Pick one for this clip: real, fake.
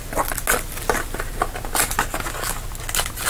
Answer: real